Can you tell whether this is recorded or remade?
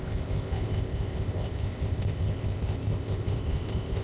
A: remade